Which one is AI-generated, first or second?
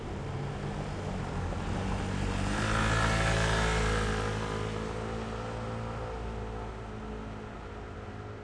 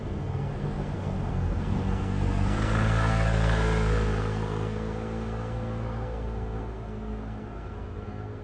second